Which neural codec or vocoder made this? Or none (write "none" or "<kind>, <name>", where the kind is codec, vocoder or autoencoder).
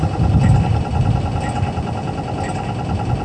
none